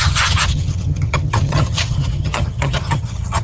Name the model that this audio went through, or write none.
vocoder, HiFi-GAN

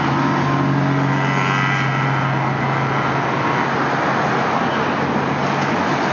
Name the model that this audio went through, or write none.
none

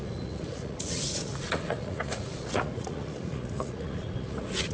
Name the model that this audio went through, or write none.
vocoder, Vocos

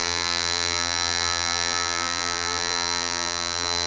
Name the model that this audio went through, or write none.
vocoder, BigVGAN v2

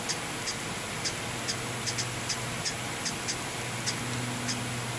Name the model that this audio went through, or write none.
none